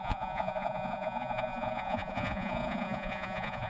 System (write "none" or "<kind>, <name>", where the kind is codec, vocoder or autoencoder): vocoder, Vocos